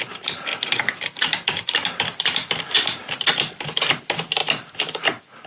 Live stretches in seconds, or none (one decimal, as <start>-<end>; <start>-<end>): 0.0-0.5; 3.8-4.4